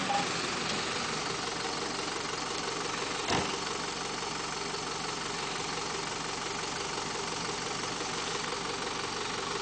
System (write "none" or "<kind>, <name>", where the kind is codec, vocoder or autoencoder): none